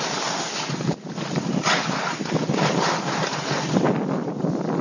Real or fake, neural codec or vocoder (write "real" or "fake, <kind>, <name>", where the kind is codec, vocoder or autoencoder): real